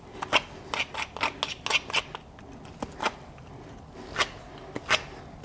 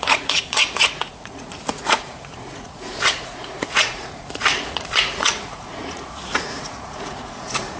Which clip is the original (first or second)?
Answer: first